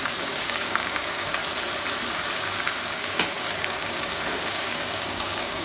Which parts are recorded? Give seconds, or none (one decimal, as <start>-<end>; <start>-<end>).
1.4-2.3